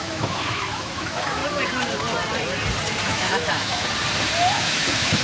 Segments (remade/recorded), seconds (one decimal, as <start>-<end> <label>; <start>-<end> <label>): 0.0-1.4 remade; 1.4-3.0 recorded; 3.0-3.8 remade; 3.8-4.5 recorded; 4.5-5.2 remade